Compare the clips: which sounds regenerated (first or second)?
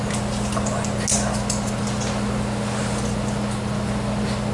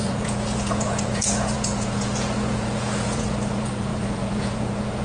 second